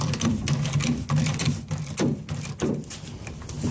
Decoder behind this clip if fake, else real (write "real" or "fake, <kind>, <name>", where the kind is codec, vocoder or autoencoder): real